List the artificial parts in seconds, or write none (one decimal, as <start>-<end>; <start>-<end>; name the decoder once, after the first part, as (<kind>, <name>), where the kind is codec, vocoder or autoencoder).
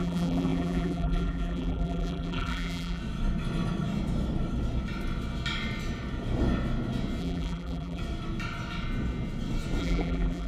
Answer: 0.0-3.0 (vocoder, BigVGAN v2); 7.2-8.0; 9.8-10.5